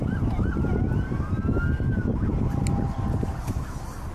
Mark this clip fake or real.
real